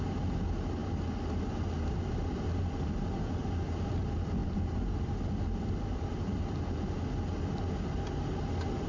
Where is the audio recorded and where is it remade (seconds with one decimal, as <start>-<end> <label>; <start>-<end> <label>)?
0.0-4.4 recorded; 4.4-5.1 remade; 5.1-8.9 recorded